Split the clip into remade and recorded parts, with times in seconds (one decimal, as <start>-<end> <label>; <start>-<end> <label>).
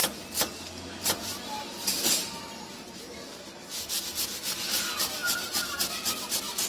0.0-6.7 recorded